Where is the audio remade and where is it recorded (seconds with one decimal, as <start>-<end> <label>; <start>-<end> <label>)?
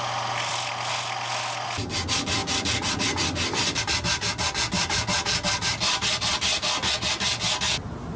0.0-8.2 recorded